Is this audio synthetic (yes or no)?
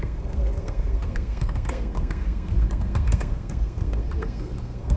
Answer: yes